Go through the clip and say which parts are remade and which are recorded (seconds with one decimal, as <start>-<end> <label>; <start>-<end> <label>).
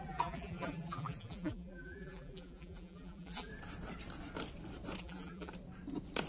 0.0-3.5 remade; 3.5-5.0 recorded; 5.0-5.5 remade; 5.5-6.3 recorded